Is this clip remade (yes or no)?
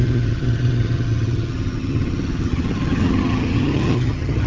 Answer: yes